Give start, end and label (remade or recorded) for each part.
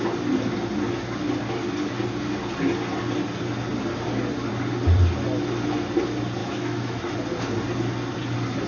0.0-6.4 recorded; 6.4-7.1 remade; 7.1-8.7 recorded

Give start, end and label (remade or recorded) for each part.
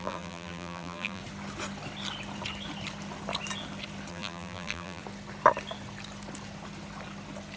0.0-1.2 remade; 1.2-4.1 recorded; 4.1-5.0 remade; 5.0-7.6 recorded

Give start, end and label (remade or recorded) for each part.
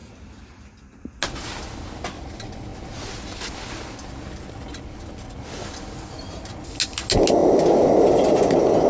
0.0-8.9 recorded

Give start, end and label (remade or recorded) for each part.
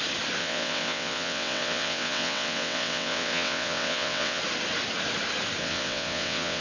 0.0-0.4 recorded; 0.4-4.4 remade; 4.4-5.6 recorded; 5.6-6.6 remade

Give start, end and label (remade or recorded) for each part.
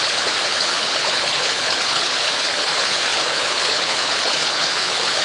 0.0-5.2 remade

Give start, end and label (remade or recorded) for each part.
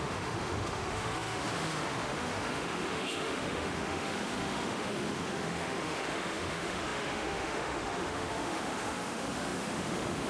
0.0-10.3 remade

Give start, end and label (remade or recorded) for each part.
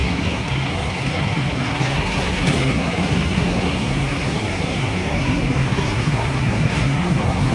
0.0-7.5 remade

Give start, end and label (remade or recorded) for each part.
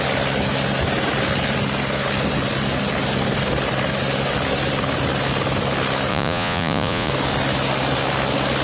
0.0-6.1 recorded; 6.1-7.1 remade; 7.1-8.6 recorded